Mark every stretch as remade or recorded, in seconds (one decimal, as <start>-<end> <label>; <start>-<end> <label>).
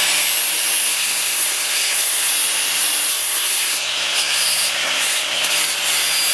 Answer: 0.0-0.9 recorded; 0.9-2.3 remade; 2.3-3.1 recorded; 3.1-5.5 remade; 5.5-6.3 recorded